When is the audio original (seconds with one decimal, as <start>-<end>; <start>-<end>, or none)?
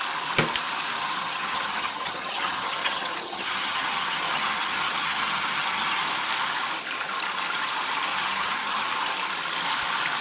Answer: 0.0-1.0; 6.0-8.1; 8.9-10.2